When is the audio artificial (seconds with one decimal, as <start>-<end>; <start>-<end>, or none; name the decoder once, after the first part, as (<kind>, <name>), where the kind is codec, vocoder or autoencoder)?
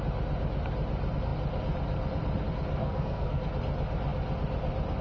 2.8-3.4 (codec, SNAC)